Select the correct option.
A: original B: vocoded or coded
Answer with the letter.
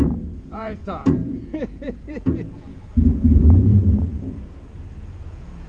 B